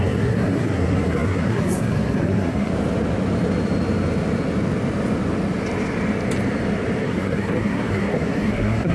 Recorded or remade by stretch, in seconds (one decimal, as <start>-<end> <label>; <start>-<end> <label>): 0.0-2.7 remade; 2.7-7.0 recorded; 7.0-8.9 remade

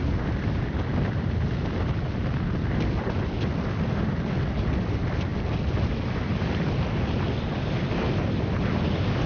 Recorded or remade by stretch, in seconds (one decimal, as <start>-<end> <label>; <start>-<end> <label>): 0.0-9.3 recorded

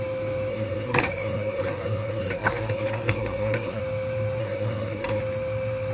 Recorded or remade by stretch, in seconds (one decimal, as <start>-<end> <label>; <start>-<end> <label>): 0.0-0.5 recorded; 0.5-3.8 remade; 3.8-4.4 recorded; 4.4-5.2 remade; 5.2-5.9 recorded

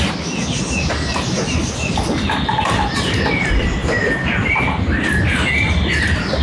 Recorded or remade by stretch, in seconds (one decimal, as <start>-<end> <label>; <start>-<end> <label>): 0.0-6.4 recorded

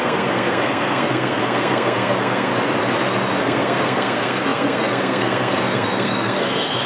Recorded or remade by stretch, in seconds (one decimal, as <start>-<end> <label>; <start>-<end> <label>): 0.0-2.5 remade; 2.5-3.4 recorded; 3.4-6.9 remade

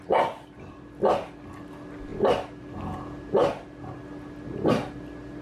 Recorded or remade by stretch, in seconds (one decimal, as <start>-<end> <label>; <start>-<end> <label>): 0.0-5.4 recorded

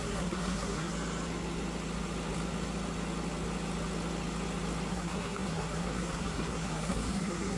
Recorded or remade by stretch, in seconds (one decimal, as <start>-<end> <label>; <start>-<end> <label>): 0.0-0.9 remade; 0.9-4.9 recorded; 4.9-7.6 remade

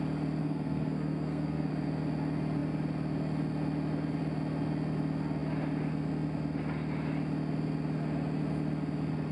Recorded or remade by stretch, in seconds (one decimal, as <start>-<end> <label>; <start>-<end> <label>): 0.0-0.4 recorded; 0.4-1.7 remade; 1.7-9.3 recorded